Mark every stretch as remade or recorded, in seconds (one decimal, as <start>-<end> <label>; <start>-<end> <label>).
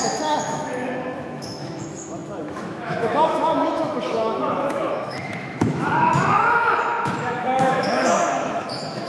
0.0-9.1 remade